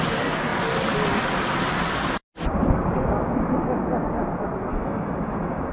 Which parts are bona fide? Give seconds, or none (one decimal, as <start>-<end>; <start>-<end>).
0.0-4.7